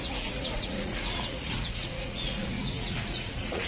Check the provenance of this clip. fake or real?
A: fake